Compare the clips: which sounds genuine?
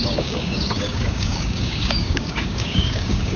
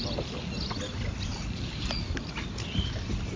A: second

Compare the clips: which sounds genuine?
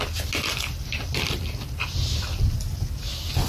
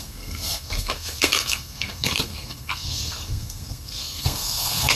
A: first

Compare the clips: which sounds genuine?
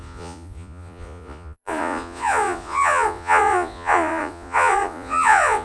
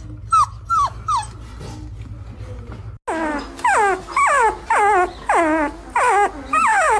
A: second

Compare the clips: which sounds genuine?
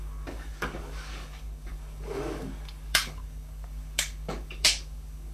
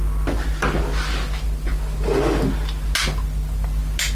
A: second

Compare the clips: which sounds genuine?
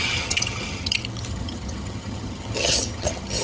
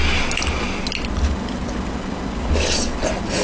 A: second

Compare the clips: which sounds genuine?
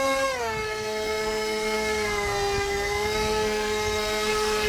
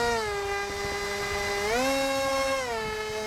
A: second